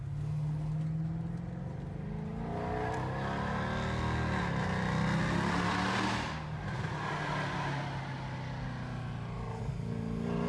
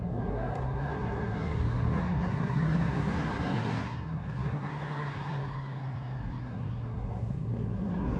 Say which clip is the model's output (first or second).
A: second